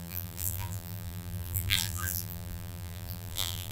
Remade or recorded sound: remade